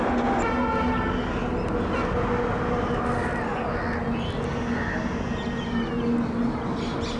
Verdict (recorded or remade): recorded